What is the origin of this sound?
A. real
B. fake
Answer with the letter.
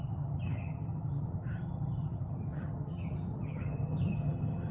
B